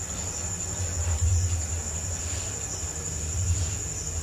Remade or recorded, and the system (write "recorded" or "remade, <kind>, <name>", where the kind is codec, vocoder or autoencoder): recorded